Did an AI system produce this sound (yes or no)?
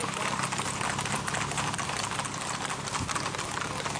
no